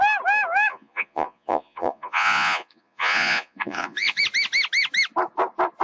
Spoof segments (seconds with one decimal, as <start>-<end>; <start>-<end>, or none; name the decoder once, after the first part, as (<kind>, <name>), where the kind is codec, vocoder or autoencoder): 0.7-4.2 (vocoder, Vocos)